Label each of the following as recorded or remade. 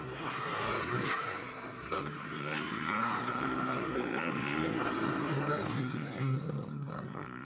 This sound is remade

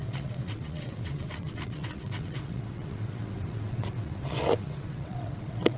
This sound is remade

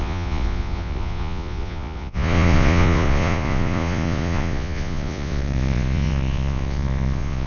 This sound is remade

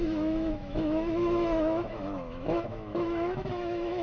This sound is remade